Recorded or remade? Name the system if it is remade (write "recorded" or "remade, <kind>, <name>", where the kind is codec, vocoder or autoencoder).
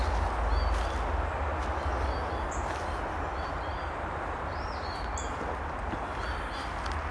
recorded